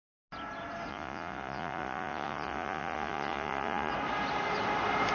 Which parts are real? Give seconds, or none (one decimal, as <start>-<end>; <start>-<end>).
0.0-0.9; 3.9-5.1